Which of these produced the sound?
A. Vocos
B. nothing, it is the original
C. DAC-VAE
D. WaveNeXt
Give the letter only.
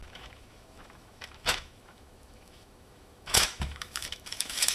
C